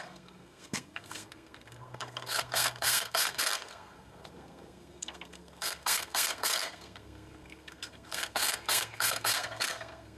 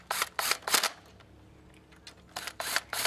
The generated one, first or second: first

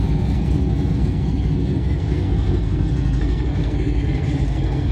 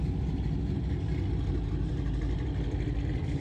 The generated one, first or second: first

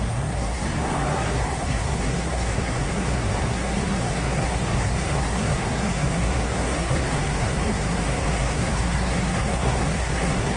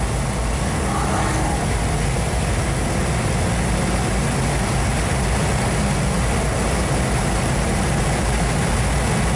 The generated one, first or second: first